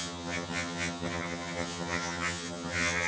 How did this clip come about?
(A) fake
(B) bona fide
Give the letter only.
A